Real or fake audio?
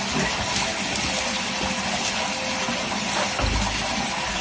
real